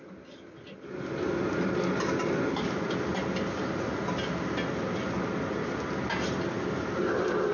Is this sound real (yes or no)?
yes